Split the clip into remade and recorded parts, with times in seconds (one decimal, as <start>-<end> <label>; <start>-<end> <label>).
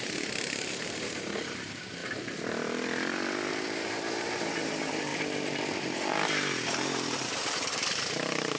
0.0-2.0 remade; 2.0-4.2 recorded; 4.2-5.1 remade; 5.1-5.7 recorded; 5.7-8.6 remade